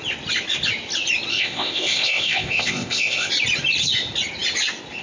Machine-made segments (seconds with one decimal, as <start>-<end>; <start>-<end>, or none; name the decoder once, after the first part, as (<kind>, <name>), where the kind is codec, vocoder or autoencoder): 1.3-3.3 (codec, ZipCodec)